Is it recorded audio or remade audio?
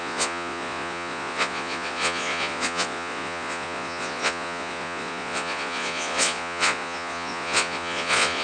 remade